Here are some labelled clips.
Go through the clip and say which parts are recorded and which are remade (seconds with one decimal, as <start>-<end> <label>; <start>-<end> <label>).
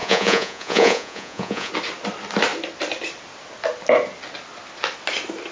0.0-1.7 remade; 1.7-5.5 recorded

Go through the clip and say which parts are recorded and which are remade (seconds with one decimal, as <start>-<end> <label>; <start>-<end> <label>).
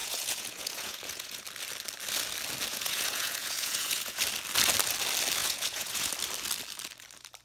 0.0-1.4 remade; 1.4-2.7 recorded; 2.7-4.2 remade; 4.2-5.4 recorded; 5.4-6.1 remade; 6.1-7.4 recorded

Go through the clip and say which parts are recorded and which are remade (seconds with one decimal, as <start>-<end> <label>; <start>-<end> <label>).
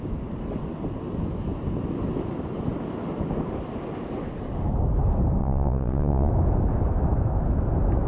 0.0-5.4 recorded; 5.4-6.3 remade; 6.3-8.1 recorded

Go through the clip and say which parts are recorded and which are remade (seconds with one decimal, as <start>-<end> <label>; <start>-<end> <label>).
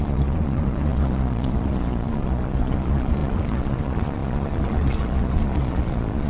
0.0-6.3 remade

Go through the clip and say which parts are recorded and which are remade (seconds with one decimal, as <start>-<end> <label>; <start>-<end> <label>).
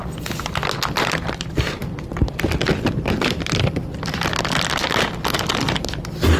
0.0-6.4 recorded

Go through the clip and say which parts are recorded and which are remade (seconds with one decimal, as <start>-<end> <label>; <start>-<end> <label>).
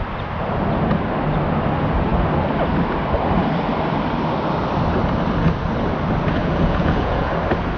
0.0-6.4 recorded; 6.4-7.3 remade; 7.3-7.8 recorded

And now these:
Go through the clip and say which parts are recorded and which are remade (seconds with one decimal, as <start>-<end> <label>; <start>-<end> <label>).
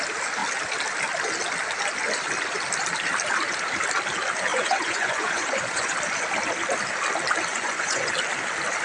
0.0-4.5 recorded; 4.5-5.9 remade; 5.9-7.5 recorded; 7.5-8.1 remade; 8.1-8.8 recorded